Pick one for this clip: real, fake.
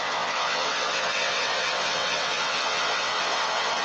fake